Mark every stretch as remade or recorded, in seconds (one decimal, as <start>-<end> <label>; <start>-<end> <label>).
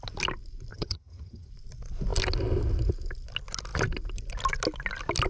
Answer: 0.0-0.7 recorded; 0.7-1.5 remade; 1.5-5.3 recorded